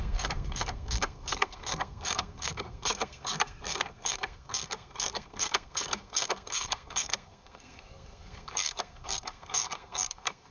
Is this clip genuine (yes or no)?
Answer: no